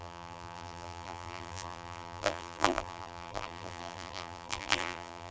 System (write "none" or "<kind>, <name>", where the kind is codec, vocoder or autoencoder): vocoder, BigVGAN v2